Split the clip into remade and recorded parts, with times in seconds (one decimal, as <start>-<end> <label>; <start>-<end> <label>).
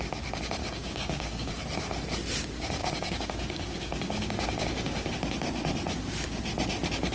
0.0-0.6 recorded; 0.6-1.5 remade; 1.5-2.8 recorded; 2.8-5.1 remade; 5.1-7.1 recorded